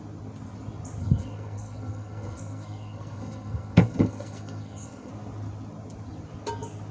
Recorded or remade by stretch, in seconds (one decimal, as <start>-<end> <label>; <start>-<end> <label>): 0.0-1.0 recorded; 1.0-5.1 remade; 5.1-6.9 recorded